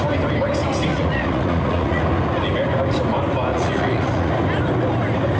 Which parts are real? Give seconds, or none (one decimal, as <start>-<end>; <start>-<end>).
0.0-0.9; 2.0-3.5; 4.3-5.4